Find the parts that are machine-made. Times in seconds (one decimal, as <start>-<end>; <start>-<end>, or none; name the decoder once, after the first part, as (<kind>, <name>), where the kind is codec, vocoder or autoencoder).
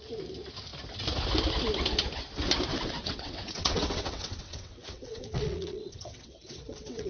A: 2.7-7.1 (vocoder, WaveNeXt)